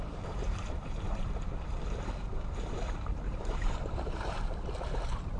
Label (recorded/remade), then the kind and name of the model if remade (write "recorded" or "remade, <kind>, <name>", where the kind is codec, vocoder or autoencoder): remade, vocoder, BigVGAN v2